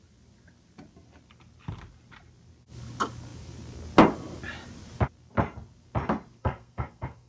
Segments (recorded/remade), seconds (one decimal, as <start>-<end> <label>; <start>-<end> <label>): 0.0-6.4 recorded; 6.4-7.3 remade